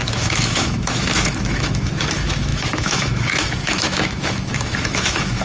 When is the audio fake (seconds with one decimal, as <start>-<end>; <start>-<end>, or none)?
0.0-5.4